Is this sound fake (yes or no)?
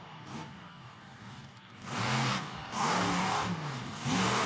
yes